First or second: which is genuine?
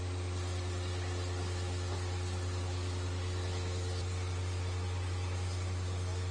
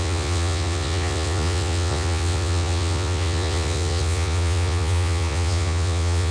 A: first